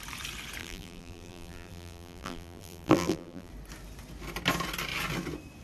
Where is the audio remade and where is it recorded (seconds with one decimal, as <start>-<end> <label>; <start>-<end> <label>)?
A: 0.0-0.6 recorded; 0.6-3.5 remade; 3.5-5.6 recorded